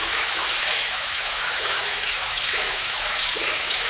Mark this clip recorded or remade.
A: remade